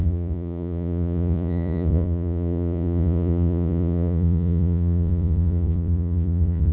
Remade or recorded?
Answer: remade